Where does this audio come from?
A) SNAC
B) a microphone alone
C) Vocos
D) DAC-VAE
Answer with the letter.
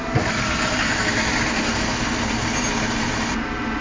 B